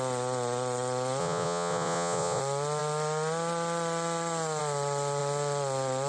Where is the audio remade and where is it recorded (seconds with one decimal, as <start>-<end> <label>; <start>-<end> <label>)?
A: 0.0-1.2 recorded; 1.2-2.4 remade; 2.4-6.1 recorded